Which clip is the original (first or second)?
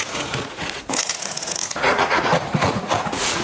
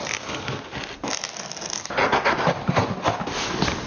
second